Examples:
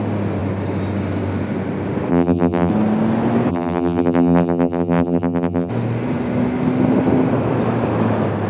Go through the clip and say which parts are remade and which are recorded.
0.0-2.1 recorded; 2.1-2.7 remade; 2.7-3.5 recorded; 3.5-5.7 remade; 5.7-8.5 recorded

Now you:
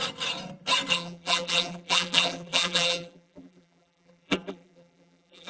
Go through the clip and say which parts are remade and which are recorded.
0.0-0.9 recorded; 0.9-5.5 remade

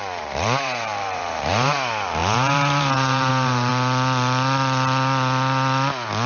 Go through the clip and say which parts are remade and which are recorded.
0.0-3.7 remade; 3.7-6.3 recorded

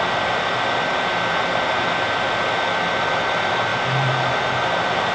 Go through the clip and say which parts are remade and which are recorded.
0.0-3.7 recorded; 3.7-5.1 remade

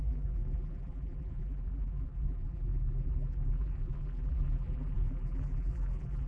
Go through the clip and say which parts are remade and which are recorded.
0.0-6.3 remade

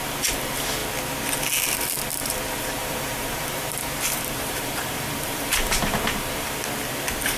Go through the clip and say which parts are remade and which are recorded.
0.0-2.8 recorded; 2.8-6.5 remade; 6.5-7.4 recorded

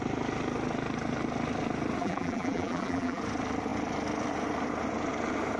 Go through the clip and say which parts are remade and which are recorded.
0.0-2.0 recorded; 2.0-3.2 remade; 3.2-5.6 recorded